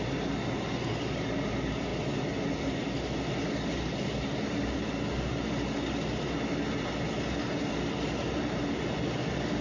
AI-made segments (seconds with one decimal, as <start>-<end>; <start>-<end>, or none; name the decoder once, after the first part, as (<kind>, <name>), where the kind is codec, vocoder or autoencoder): none